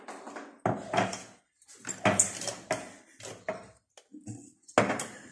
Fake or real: real